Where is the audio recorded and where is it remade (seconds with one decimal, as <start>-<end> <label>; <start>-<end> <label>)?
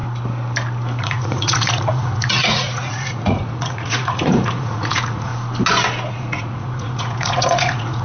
0.0-1.0 recorded; 1.0-5.3 remade; 5.3-6.1 recorded; 6.1-8.0 remade